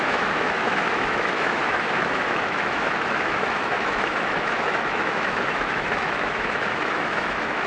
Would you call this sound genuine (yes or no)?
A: no